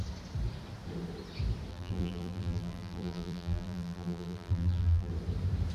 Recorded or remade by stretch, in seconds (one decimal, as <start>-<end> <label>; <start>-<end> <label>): 0.0-1.7 recorded; 1.7-5.1 remade; 5.1-5.7 recorded